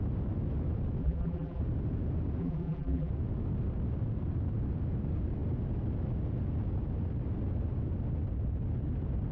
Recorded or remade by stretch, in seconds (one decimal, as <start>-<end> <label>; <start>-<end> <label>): 0.0-1.0 recorded; 1.0-1.6 remade; 1.6-2.4 recorded; 2.4-3.1 remade; 3.1-9.3 recorded